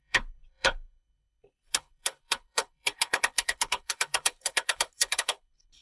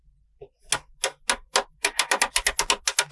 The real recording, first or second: second